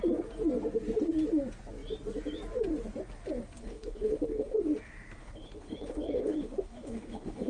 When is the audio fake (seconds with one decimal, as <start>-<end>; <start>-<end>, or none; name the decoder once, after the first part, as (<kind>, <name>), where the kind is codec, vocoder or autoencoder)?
3.6-4.6 (codec, HILCodec); 5.2-7.5